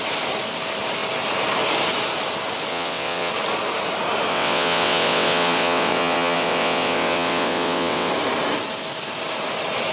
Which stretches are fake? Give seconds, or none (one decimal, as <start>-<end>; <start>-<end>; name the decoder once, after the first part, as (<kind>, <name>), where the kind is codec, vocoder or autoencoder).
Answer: 2.7-3.3 (vocoder, WaveNeXt); 4.3-8.1